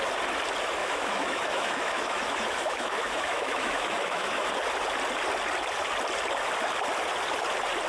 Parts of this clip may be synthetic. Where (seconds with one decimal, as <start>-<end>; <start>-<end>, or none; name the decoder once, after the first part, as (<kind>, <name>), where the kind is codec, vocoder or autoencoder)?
0.8-4.5 (autoencoder, DAC-VAE)